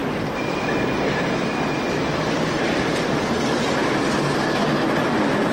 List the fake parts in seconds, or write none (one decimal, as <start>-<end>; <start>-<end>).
2.3-5.5